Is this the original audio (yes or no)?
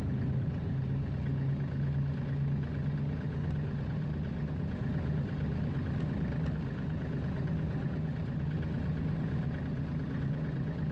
yes